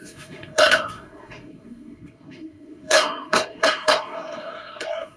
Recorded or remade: remade